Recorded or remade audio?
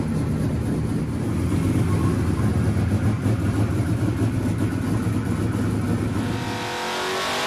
recorded